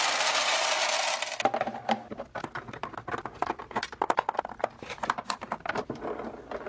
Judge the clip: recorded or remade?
recorded